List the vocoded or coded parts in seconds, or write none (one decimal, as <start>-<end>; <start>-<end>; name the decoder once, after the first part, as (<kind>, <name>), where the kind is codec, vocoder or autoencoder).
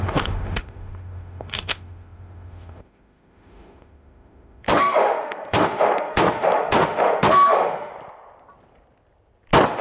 0.0-7.9 (autoencoder, DAC-VAE)